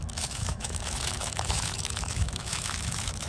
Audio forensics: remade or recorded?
remade